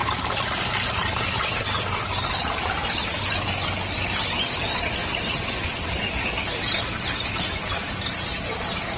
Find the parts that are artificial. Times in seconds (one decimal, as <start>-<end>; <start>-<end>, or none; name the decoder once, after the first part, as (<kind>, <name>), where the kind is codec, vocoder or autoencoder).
2.4-3.3 (vocoder, BigVGAN v2); 5.0-8.2